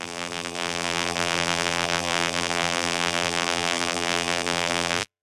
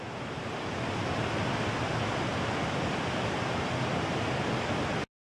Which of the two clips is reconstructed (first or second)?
first